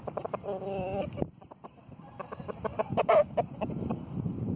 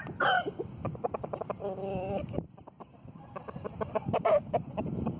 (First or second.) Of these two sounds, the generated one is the second